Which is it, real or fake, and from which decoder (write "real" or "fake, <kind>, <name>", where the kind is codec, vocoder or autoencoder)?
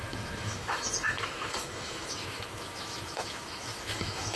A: fake, autoencoder, DAC-VAE